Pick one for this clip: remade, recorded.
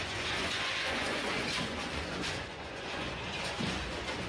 remade